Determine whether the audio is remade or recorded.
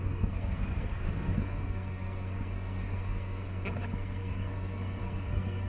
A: remade